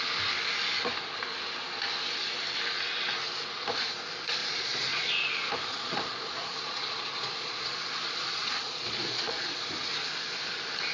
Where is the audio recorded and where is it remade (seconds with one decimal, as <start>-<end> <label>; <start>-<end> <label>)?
0.0-4.4 recorded; 4.4-5.1 remade; 5.1-5.7 recorded; 5.7-9.6 remade; 9.6-10.9 recorded

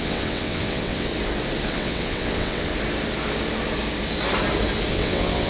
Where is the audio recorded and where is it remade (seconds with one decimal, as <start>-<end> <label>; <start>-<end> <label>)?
0.0-1.1 remade; 1.1-1.7 recorded; 1.7-2.7 remade; 2.7-4.9 recorded; 4.9-5.5 remade

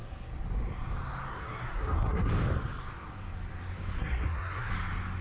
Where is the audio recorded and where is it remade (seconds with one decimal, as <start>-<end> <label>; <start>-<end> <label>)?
0.0-1.3 recorded; 1.3-2.3 remade; 2.3-4.0 recorded; 4.0-4.7 remade; 4.7-5.2 recorded